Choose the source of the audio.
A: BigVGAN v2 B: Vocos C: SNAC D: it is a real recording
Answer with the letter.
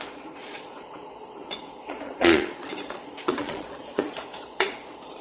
B